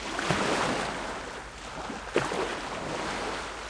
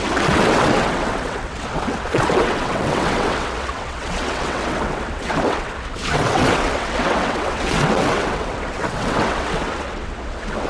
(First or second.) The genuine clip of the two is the first